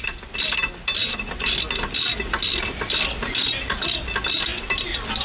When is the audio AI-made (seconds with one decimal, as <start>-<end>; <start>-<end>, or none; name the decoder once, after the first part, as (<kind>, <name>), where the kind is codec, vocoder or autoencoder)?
1.0-1.5 (vocoder, BigVGAN v2)